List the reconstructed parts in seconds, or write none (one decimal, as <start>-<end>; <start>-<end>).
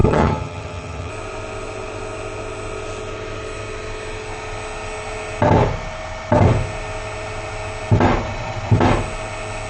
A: 0.0-1.1